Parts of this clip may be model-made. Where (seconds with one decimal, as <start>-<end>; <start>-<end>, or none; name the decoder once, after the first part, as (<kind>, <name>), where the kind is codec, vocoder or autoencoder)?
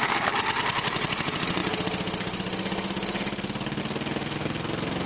none